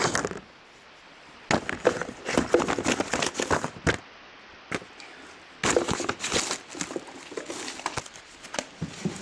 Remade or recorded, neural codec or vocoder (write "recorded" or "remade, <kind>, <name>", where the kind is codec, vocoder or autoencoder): recorded